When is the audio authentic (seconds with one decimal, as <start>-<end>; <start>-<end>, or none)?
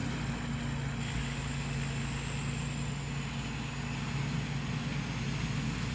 0.0-5.9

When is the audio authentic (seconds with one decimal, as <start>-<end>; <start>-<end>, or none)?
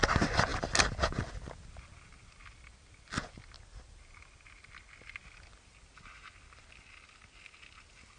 0.0-8.2